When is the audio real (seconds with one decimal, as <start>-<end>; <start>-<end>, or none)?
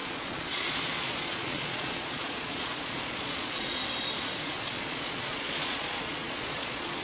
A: 3.8-4.7